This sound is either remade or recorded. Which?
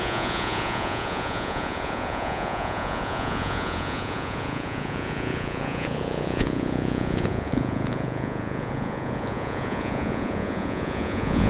remade